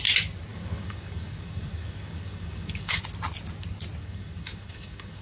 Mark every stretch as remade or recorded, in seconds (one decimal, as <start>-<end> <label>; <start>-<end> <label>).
0.0-0.5 recorded; 0.5-3.0 remade; 3.0-4.0 recorded; 4.0-5.2 remade

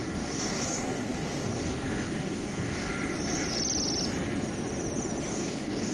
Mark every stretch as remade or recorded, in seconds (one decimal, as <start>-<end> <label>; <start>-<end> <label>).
0.0-2.9 remade; 2.9-5.3 recorded; 5.3-5.9 remade